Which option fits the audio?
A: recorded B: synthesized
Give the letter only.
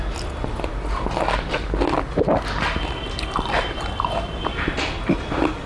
A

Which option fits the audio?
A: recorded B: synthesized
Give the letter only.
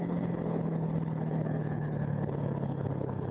B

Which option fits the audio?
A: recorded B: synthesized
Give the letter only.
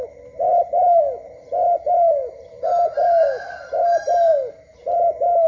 A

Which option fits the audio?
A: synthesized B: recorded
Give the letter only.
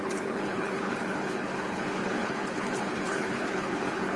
A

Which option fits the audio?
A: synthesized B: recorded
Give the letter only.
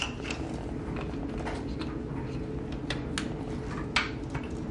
B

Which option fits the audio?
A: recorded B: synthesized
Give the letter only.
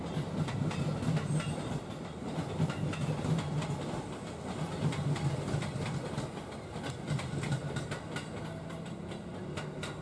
A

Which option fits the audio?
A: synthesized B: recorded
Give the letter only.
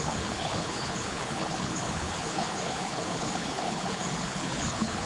A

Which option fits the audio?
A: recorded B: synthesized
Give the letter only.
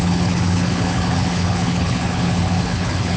B